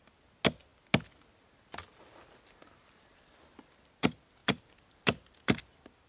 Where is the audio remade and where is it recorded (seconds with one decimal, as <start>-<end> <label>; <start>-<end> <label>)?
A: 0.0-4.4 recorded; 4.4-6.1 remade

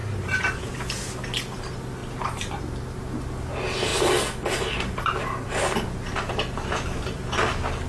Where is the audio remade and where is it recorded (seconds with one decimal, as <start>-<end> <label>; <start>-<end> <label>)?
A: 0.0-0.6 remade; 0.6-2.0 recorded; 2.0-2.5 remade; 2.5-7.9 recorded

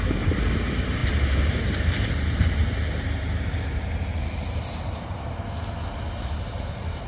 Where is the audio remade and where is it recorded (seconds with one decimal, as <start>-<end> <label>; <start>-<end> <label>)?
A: 0.0-1.0 recorded; 1.0-5.3 remade; 5.3-7.1 recorded